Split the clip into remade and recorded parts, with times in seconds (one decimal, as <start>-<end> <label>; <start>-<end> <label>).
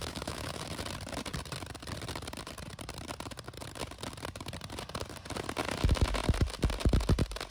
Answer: 0.0-0.6 remade; 0.6-7.5 recorded